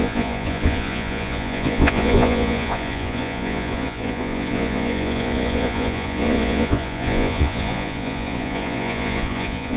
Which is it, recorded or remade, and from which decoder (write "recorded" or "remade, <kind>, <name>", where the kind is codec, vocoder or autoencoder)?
remade, vocoder, Vocos